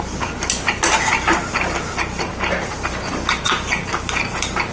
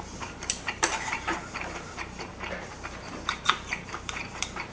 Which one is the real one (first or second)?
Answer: first